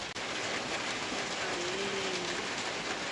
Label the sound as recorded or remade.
recorded